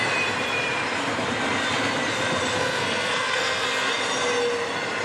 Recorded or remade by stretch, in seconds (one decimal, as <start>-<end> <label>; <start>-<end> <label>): 0.0-2.6 recorded; 2.6-3.9 remade; 3.9-5.0 recorded